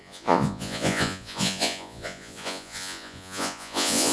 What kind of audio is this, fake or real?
fake